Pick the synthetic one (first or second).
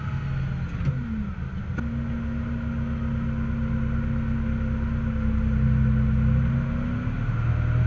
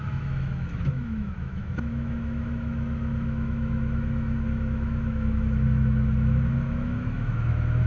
second